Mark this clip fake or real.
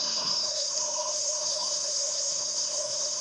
fake